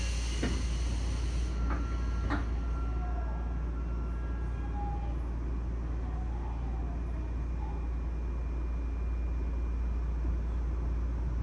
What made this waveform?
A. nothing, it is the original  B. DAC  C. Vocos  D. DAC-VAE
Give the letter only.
A